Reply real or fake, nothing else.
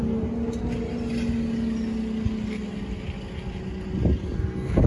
real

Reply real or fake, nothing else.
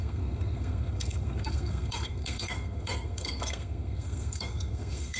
fake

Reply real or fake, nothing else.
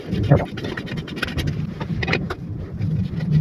fake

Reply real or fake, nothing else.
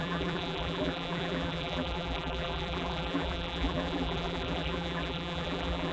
fake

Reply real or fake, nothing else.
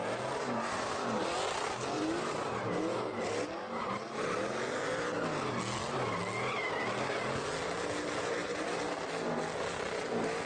real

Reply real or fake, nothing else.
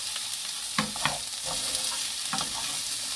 real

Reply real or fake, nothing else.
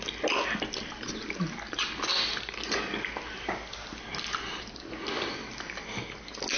real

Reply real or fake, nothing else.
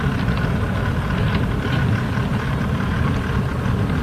real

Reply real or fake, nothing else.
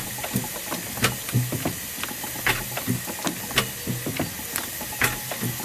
real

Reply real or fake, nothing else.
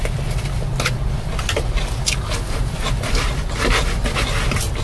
real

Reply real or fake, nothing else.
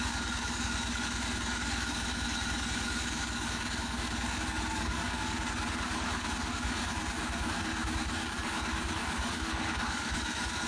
fake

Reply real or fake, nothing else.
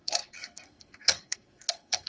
fake